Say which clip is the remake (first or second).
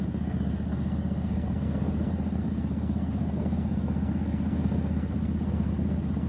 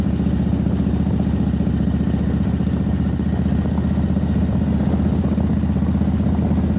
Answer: first